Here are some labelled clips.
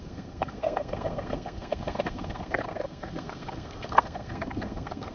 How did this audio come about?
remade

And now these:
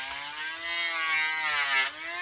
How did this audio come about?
recorded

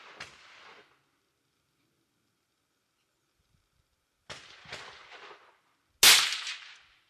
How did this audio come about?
recorded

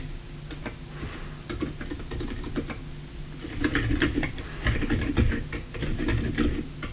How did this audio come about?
recorded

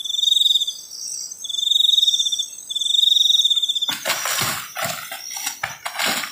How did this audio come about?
recorded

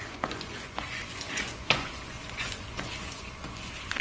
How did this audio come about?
remade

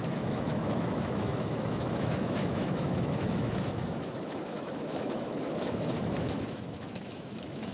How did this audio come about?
remade